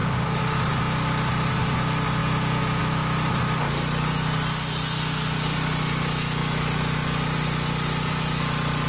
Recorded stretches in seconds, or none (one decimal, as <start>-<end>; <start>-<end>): 0.0-2.2; 2.8-8.9